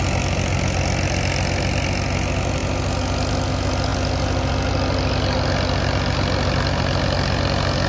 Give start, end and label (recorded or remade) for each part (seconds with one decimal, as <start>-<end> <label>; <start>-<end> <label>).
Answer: 0.0-7.9 recorded